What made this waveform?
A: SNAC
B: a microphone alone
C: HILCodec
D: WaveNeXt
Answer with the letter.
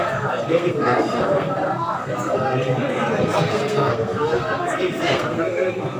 A